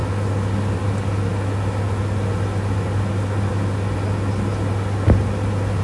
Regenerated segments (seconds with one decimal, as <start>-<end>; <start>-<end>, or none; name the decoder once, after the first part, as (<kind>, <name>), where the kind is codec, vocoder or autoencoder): none